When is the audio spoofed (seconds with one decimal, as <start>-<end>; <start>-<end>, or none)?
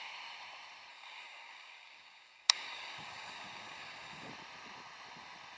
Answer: 0.9-4.3